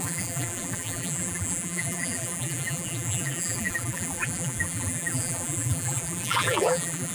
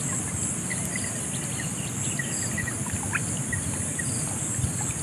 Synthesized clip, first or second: first